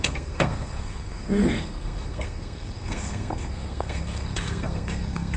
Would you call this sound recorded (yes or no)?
no